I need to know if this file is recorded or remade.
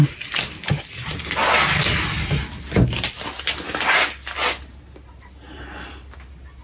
recorded